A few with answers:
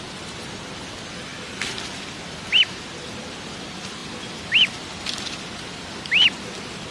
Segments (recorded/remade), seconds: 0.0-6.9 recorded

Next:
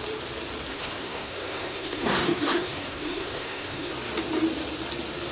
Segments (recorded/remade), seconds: 0.0-0.7 recorded; 0.7-3.9 remade; 3.9-5.3 recorded

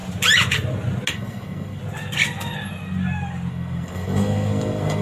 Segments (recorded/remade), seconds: 0.0-1.1 recorded; 1.1-1.8 remade; 1.8-3.5 recorded; 3.5-5.0 remade

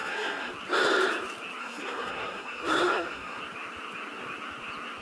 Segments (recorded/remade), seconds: 0.0-0.5 remade; 0.5-1.6 recorded; 1.6-3.4 remade; 3.4-5.0 recorded

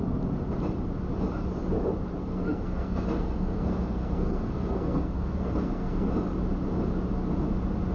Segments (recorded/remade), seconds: 0.0-2.2 recorded; 2.2-6.1 remade; 6.1-7.9 recorded

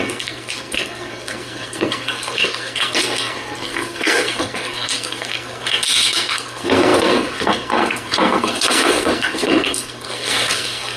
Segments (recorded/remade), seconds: 0.0-11.0 remade